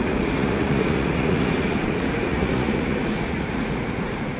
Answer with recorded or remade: remade